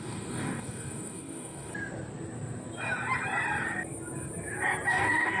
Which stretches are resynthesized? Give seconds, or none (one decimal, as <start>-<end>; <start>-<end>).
0.0-1.7; 4.9-5.4